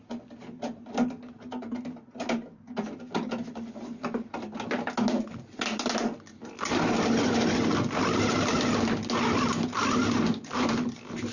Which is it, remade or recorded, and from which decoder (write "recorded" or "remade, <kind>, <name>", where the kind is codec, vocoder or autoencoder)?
recorded